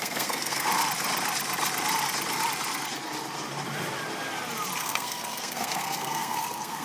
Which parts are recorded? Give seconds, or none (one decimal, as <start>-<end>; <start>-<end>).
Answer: 0.7-4.8